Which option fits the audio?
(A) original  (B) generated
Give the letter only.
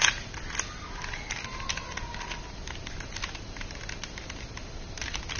A